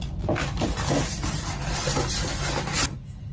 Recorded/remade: recorded